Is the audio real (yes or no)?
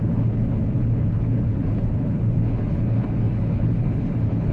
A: no